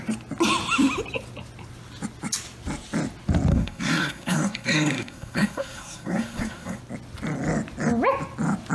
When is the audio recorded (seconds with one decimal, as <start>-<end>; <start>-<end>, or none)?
0.0-3.5; 6.8-8.7